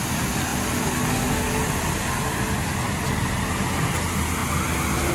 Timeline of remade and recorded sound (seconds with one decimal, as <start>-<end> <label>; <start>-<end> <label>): 0.0-5.1 recorded